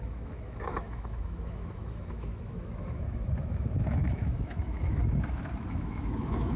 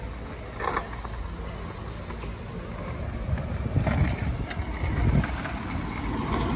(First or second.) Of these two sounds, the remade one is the first